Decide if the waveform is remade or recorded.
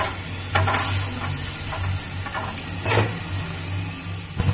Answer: recorded